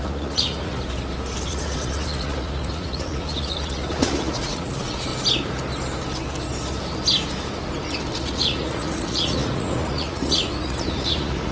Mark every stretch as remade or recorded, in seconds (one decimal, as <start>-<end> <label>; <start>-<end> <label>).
0.0-0.8 remade; 0.8-1.5 recorded; 1.5-5.1 remade; 5.1-8.2 recorded; 8.2-11.5 remade